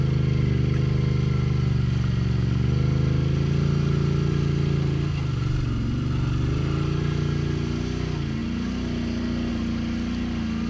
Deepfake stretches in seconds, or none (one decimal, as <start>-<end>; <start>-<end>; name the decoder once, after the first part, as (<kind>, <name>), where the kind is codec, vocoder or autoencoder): none

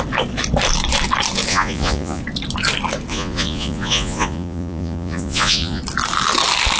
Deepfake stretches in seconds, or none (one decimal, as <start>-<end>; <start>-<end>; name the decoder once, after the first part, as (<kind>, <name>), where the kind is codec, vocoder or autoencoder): 1.5-2.2 (vocoder, Vocos); 3.1-5.8

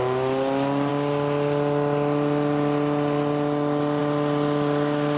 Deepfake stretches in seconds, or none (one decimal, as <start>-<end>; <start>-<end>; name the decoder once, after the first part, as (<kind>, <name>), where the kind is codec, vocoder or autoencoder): none

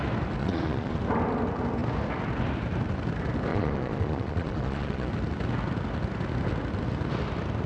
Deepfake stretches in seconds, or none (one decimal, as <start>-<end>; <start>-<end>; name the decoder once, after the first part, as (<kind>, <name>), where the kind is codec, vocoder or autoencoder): 0.4-1.0 (vocoder, Vocos); 3.5-5.1

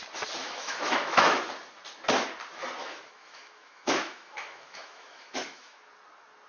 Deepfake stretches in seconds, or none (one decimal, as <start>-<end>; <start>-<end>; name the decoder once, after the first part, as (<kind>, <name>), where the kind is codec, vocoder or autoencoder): 0.4-1.4 (autoencoder, DAC-VAE); 2.8-5.9